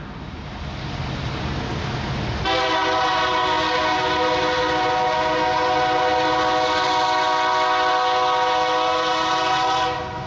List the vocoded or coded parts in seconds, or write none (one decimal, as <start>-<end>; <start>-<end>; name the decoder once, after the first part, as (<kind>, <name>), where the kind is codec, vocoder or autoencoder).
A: none